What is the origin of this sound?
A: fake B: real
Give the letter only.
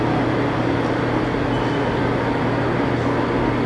B